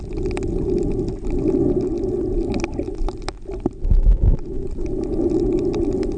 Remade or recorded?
recorded